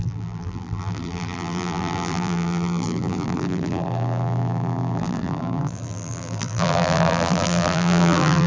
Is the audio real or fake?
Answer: fake